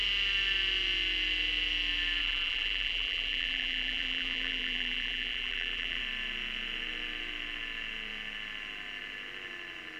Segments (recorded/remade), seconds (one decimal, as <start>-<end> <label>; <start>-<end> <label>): 0.0-2.2 recorded; 2.2-6.0 remade; 6.0-10.0 recorded

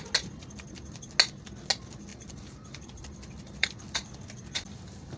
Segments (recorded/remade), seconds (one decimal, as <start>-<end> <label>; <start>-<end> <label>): 0.0-2.1 recorded; 2.1-5.2 remade

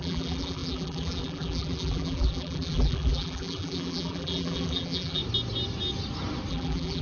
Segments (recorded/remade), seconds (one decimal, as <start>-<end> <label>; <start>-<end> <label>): 0.0-5.2 remade; 5.2-6.5 recorded; 6.5-7.0 remade

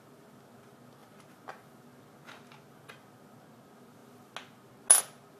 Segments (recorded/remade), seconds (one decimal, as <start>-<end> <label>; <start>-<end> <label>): 0.0-5.4 recorded